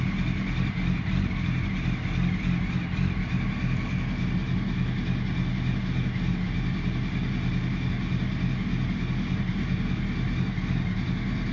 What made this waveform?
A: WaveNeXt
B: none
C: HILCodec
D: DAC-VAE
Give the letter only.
B